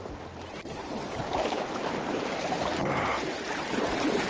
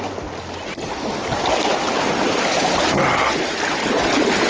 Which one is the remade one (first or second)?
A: first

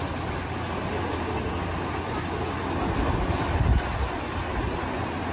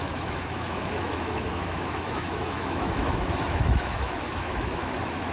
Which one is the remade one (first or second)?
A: second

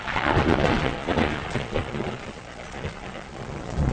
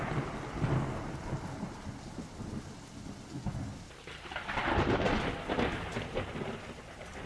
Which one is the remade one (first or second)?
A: first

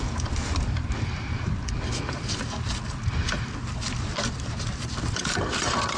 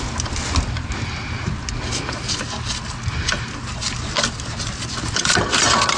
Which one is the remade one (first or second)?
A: first